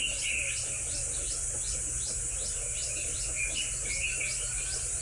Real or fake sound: real